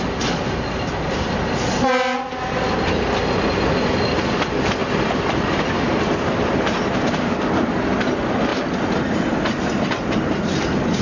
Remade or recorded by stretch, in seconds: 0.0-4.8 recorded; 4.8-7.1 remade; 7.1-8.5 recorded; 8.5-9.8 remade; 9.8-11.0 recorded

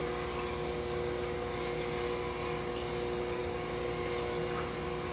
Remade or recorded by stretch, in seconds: 0.0-5.1 recorded

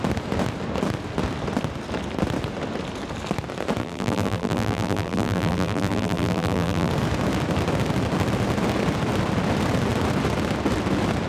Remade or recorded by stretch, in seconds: 0.0-3.8 recorded; 3.8-6.9 remade; 6.9-11.3 recorded

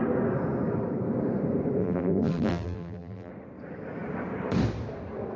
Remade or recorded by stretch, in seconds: 0.0-1.8 recorded; 1.8-3.3 remade; 3.3-5.4 recorded

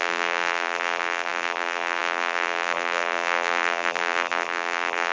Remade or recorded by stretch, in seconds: 0.0-5.1 remade

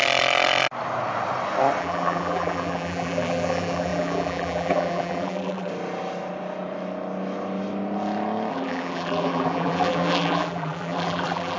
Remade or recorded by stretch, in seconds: 0.0-1.8 recorded; 1.8-5.7 remade; 5.7-8.5 recorded; 8.5-11.6 remade

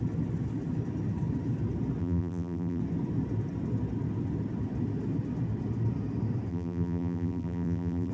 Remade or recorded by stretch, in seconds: 0.0-2.0 recorded; 2.0-2.8 remade; 2.8-6.5 recorded; 6.5-8.1 remade